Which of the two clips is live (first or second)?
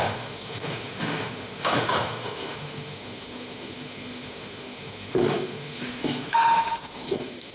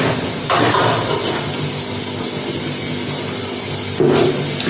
second